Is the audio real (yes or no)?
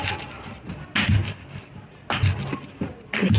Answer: yes